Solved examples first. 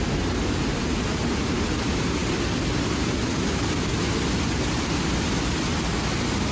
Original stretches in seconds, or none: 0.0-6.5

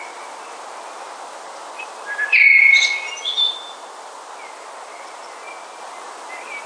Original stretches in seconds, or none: 0.0-6.7

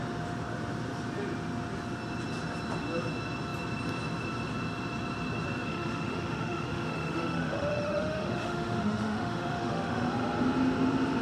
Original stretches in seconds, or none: 0.0-5.7; 10.1-11.2